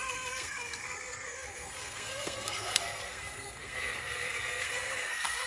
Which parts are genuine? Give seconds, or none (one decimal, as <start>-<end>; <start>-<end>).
none